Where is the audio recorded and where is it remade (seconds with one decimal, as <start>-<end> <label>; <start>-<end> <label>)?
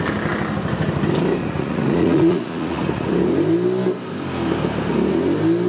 0.0-1.4 recorded; 1.4-3.1 remade; 3.1-5.7 recorded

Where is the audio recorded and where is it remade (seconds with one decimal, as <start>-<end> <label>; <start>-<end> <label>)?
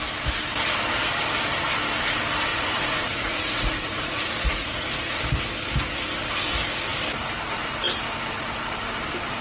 0.0-2.5 recorded; 2.5-5.2 remade; 5.2-9.4 recorded